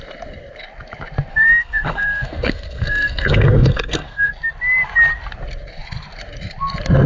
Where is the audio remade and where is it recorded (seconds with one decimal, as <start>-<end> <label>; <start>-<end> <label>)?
0.0-1.3 recorded; 1.3-4.3 remade; 4.3-7.1 recorded

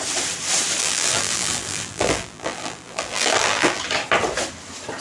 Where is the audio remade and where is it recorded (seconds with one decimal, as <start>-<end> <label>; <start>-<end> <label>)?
0.0-0.8 recorded; 0.8-3.8 remade; 3.8-5.0 recorded

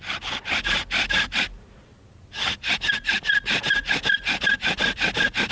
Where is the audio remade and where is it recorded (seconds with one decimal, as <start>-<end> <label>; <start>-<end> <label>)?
0.0-5.5 recorded

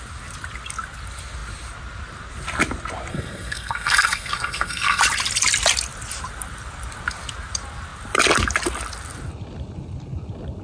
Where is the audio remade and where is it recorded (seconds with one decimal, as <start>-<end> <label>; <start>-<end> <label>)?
0.0-3.1 recorded; 3.1-5.0 remade; 5.0-10.6 recorded

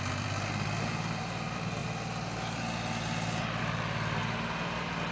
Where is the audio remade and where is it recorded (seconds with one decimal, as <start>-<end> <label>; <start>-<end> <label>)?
0.0-1.8 remade; 1.8-3.6 recorded; 3.6-4.2 remade; 4.2-5.1 recorded